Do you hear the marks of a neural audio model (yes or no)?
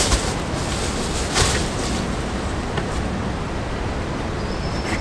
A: no